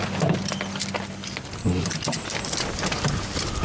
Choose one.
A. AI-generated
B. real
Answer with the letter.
B